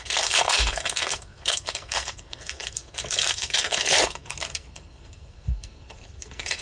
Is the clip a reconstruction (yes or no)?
yes